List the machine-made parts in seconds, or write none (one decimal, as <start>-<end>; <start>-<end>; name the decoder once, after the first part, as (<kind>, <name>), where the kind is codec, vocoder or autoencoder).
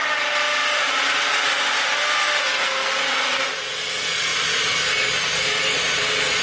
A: 2.4-3.4 (codec, SNAC)